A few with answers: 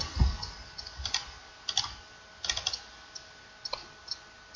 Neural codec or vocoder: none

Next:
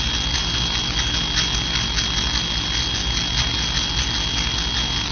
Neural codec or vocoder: none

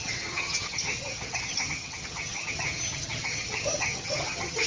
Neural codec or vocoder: vocoder, HiFi-GAN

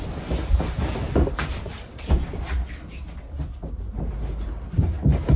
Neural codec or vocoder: none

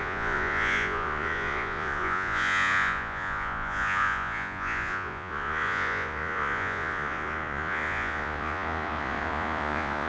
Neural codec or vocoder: vocoder, Vocos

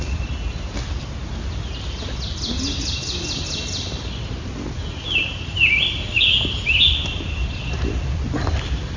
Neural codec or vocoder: none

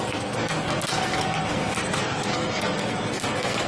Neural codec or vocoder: codec, SNAC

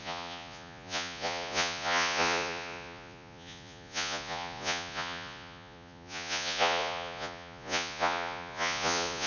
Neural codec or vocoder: vocoder, Vocos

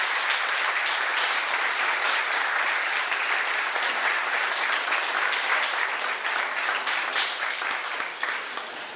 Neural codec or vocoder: vocoder, BigVGAN v2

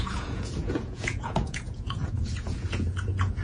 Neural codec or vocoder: vocoder, Vocos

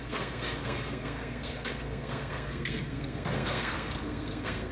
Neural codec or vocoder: codec, SNAC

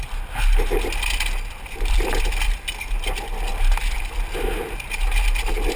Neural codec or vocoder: none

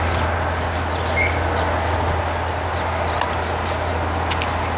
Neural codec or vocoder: none